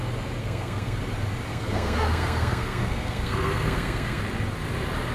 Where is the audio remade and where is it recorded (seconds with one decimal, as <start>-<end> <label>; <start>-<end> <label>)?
0.0-0.4 recorded; 0.4-1.0 remade; 1.0-1.5 recorded; 1.5-4.2 remade; 4.2-5.1 recorded